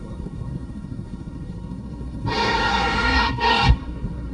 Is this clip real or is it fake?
fake